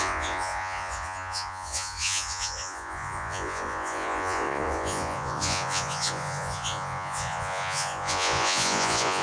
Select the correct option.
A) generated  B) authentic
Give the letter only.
A